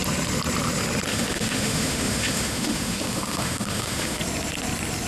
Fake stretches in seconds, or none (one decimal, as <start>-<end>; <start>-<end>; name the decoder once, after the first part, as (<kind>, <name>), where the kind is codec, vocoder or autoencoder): 1.1-4.2 (autoencoder, DAC-VAE)

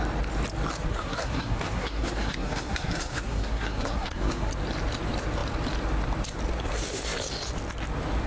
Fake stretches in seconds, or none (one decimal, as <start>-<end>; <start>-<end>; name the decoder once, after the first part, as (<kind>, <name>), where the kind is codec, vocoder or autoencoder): 0.9-4.5 (codec, SNAC)

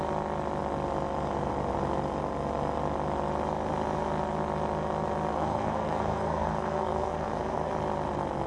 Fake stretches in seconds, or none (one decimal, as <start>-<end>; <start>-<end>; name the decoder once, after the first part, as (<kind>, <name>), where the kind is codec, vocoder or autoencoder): 5.3-7.7 (codec, SNAC)